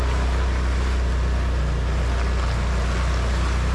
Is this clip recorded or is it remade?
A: recorded